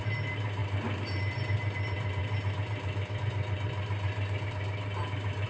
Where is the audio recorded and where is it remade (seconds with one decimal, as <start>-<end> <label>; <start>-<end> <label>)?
0.0-5.5 remade